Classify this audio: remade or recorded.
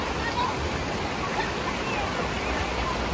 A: recorded